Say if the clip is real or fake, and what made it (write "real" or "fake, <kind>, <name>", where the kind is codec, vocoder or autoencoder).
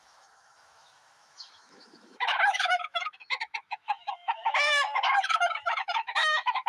fake, autoencoder, DAC-VAE